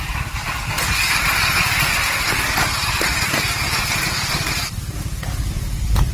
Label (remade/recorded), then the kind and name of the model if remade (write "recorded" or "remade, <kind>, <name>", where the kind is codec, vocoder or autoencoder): recorded